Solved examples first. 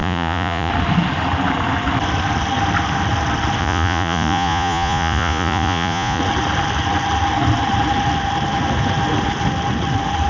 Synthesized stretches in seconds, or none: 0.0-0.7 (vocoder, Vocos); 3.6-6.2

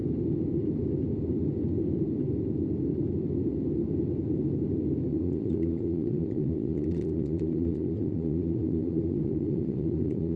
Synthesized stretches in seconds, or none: 5.1-10.4 (vocoder, Vocos)